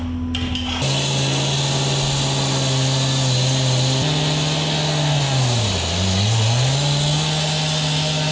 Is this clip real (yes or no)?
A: yes